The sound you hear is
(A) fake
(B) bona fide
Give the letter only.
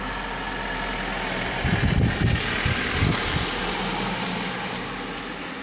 B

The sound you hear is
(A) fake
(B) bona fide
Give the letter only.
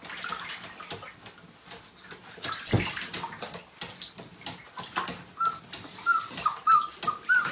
B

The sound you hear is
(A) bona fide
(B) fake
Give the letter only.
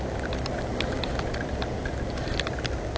A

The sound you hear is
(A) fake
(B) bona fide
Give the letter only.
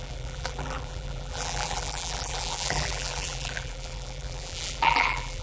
A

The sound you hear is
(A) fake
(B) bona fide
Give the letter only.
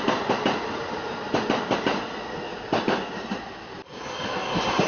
B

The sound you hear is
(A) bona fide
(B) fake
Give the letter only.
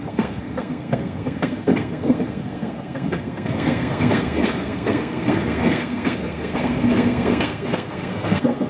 B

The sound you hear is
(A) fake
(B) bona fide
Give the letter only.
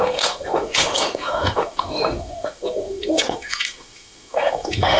A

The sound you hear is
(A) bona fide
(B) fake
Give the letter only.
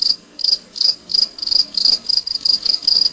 B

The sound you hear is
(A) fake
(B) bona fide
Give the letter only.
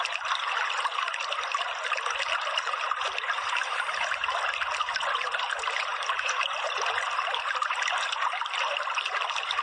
B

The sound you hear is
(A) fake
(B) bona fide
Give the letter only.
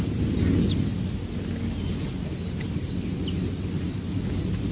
A